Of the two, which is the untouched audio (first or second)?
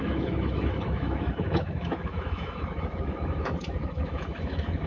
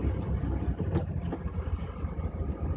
second